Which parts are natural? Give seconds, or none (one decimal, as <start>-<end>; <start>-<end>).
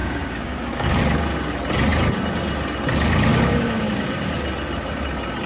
1.0-3.3; 4.3-5.5